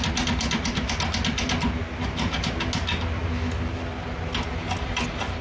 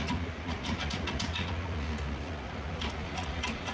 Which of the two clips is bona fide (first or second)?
first